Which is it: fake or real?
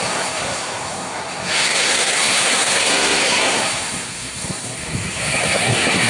fake